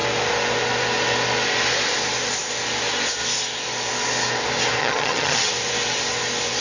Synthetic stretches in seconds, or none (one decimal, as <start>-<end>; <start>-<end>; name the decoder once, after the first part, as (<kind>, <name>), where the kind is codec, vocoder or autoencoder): 4.8-5.5 (vocoder, HiFi-GAN)